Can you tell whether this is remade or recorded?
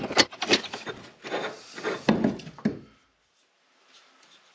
recorded